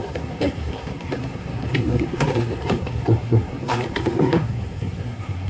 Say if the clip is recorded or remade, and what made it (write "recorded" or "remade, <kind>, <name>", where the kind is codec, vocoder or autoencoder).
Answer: remade, codec, SNAC